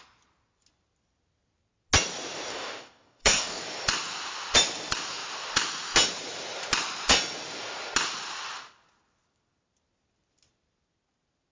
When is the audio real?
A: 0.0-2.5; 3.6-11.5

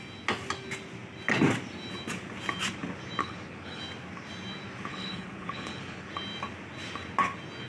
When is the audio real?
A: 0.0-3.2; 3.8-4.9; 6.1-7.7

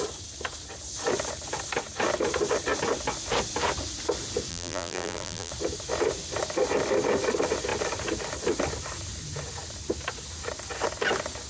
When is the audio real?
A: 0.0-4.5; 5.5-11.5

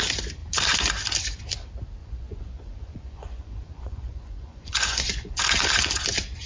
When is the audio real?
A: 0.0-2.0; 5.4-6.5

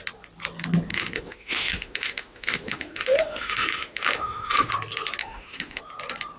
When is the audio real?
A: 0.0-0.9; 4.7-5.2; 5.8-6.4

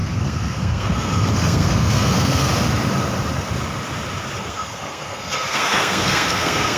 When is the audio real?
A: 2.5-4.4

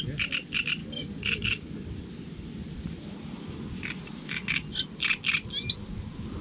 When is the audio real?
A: 0.0-0.8; 1.9-6.4